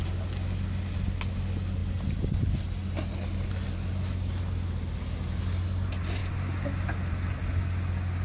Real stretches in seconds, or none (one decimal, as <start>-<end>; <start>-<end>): 0.0-8.2